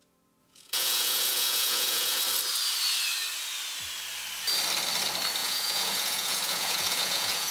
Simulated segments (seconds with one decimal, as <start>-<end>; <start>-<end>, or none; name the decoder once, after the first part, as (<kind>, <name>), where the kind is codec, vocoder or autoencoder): 0.4-2.2 (vocoder, Vocos); 5.4-7.5